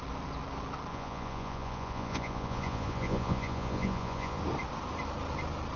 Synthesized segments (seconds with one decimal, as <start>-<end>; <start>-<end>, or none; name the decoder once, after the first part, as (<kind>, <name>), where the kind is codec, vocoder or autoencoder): 0.9-4.4 (vocoder, Vocos)